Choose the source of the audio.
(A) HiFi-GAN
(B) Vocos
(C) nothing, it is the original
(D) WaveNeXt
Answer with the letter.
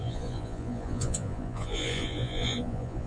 B